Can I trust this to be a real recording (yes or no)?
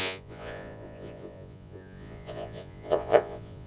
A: no